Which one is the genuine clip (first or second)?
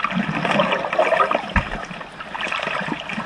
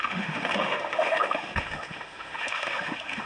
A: first